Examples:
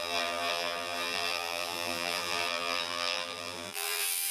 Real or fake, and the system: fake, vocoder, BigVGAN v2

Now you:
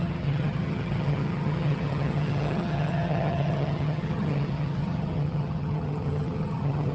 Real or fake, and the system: fake, vocoder, HiFi-GAN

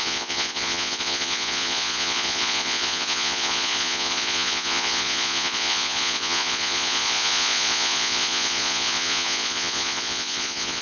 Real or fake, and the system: fake, vocoder, Vocos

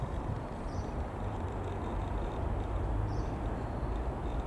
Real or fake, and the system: fake, vocoder, BigVGAN v2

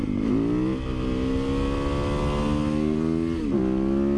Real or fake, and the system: real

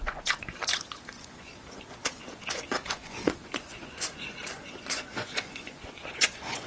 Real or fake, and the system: fake, vocoder, Vocos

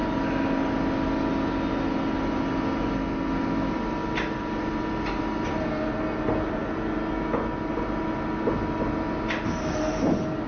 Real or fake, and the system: real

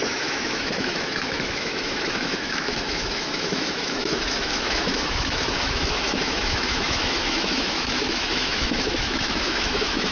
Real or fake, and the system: fake, autoencoder, DAC-VAE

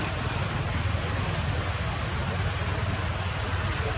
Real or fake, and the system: real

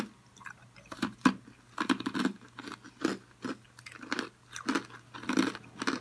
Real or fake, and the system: real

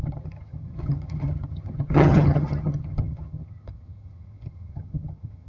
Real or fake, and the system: fake, vocoder, HiFi-GAN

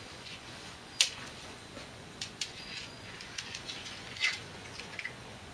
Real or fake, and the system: fake, vocoder, Vocos